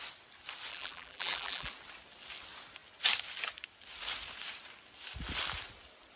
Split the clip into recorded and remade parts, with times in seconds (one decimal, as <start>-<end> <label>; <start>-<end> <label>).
0.0-0.7 recorded; 0.7-1.7 remade; 1.7-6.2 recorded